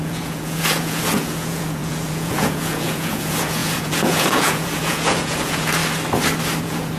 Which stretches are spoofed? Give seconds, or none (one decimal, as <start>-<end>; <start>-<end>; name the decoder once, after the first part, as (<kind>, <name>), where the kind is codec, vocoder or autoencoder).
0.0-5.8 (vocoder, Vocos); 6.6-7.0